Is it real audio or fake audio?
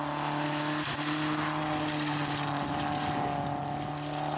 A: real